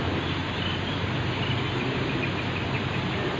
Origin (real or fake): real